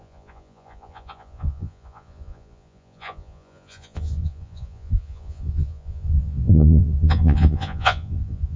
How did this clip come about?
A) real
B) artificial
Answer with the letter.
B